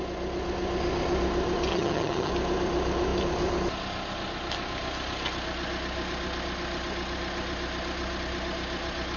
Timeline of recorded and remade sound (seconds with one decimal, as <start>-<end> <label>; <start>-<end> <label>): 0.0-1.7 recorded; 1.7-2.3 remade; 2.3-9.2 recorded